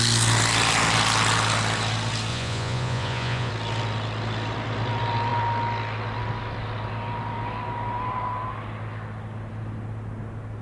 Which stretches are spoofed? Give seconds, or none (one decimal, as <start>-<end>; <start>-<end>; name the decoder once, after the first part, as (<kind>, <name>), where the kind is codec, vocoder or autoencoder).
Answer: 2.3-3.5 (vocoder, Vocos)